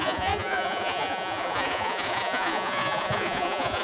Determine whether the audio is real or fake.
fake